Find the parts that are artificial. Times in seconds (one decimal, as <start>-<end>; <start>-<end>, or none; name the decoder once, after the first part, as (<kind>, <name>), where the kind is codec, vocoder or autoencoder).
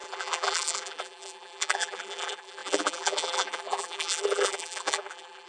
0.0-5.5 (vocoder, BigVGAN v2)